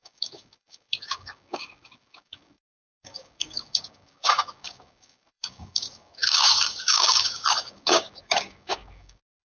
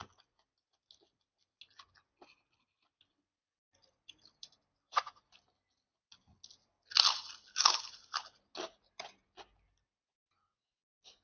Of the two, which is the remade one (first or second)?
first